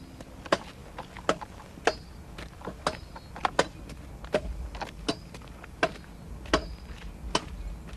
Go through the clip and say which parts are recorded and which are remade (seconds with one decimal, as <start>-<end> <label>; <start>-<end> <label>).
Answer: 0.0-8.0 recorded